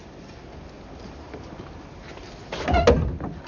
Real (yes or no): yes